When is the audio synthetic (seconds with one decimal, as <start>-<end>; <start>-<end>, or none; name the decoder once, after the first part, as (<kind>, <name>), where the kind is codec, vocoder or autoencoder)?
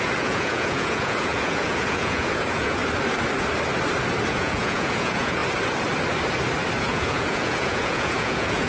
0.0-2.8 (vocoder, Vocos); 4.3-5.4; 6.8-8.7